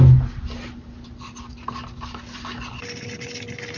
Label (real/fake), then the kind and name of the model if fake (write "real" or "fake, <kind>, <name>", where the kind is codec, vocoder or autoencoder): real